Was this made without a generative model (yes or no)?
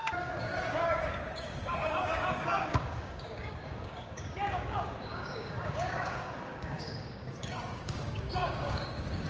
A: no